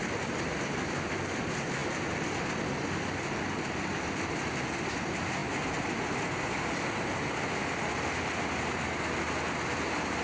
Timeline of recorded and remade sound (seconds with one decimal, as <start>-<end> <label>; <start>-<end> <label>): 0.0-10.2 recorded